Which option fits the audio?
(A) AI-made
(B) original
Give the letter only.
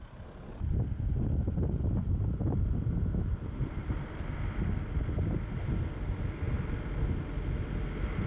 B